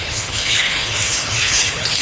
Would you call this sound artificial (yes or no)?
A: yes